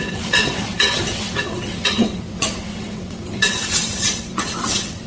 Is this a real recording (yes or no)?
no